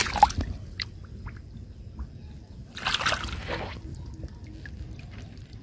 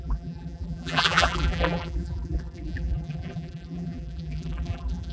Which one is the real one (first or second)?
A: first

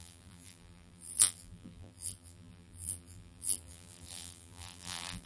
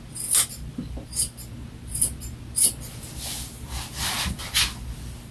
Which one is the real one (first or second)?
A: second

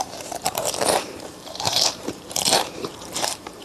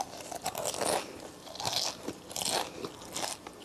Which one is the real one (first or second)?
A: second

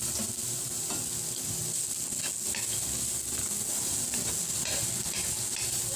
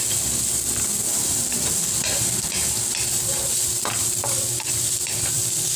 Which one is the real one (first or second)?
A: first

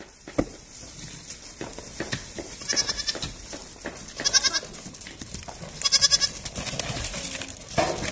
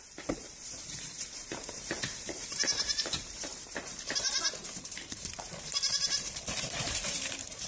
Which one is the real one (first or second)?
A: first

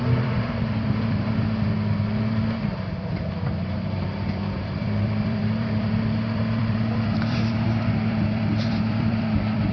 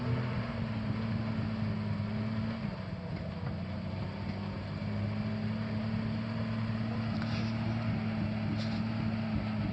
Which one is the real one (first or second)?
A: second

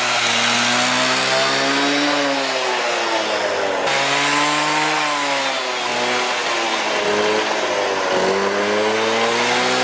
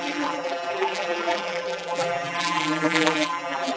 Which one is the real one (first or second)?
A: first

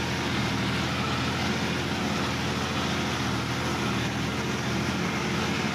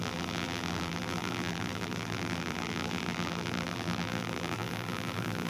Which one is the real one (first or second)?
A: first